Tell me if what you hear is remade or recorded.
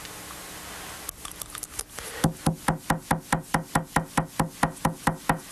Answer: recorded